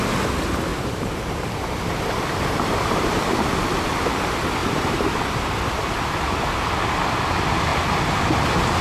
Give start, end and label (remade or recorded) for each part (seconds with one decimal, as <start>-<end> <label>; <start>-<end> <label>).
0.0-0.7 recorded; 0.7-2.8 remade; 2.8-4.6 recorded; 4.6-5.2 remade; 5.2-8.8 recorded